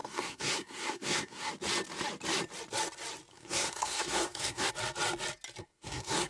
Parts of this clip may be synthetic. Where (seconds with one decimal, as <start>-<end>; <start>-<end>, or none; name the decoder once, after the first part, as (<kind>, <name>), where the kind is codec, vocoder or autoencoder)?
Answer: 0.0-1.5 (codec, SNAC); 3.3-4.7; 5.6-6.3